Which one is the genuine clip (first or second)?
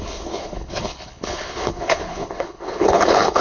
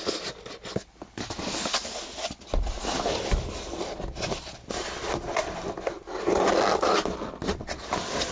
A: second